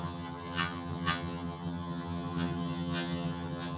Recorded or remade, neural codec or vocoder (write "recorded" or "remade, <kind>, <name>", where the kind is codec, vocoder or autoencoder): remade, vocoder, HiFi-GAN